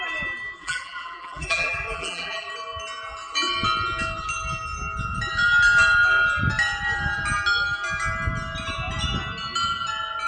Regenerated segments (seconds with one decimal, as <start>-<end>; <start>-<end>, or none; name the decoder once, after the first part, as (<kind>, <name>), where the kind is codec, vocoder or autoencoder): 0.6-2.5 (vocoder, BigVGAN v2)